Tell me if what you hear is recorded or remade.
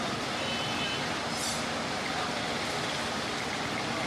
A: recorded